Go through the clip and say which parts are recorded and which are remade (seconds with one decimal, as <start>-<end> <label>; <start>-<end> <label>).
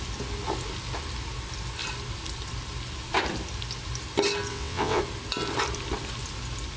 0.0-4.5 recorded; 4.5-5.0 remade; 5.0-6.8 recorded